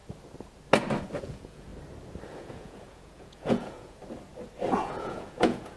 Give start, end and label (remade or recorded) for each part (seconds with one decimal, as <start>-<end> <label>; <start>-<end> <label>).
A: 0.0-1.2 recorded; 1.2-1.7 remade; 1.7-2.4 recorded; 2.4-4.0 remade; 4.0-4.7 recorded; 4.7-5.8 remade

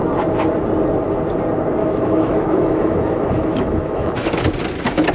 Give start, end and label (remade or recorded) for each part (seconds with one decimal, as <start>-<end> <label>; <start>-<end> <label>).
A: 0.0-1.8 recorded; 1.8-4.4 remade; 4.4-5.1 recorded

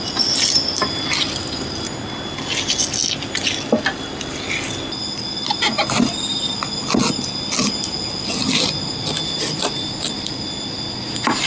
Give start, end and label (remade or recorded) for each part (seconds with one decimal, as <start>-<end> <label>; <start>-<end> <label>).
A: 0.0-11.5 recorded

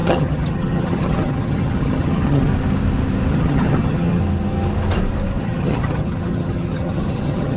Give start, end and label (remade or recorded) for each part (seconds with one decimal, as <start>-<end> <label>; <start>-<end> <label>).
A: 0.0-2.5 remade; 2.5-3.3 recorded; 3.3-4.2 remade; 4.2-5.4 recorded; 5.4-7.6 remade